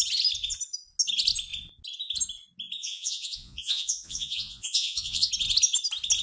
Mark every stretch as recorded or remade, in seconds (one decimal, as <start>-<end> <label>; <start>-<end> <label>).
0.0-2.8 recorded; 2.8-5.3 remade; 5.3-6.2 recorded